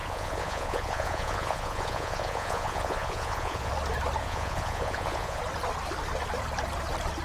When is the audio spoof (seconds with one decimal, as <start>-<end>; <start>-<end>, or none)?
0.0-3.7; 4.2-5.4